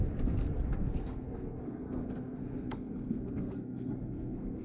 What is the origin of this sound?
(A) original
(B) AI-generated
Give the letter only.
B